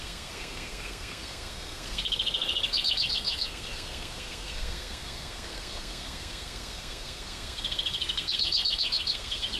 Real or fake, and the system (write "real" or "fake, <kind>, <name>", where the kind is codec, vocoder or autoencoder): fake, codec, SNAC